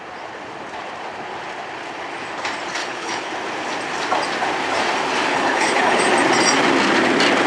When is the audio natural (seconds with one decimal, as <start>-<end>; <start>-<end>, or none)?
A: 0.0-2.8; 3.3-5.3; 6.0-7.5